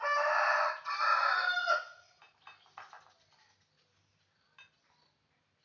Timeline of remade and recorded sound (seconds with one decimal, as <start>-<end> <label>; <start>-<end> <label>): 0.0-1.6 recorded; 1.6-2.2 remade; 2.2-5.6 recorded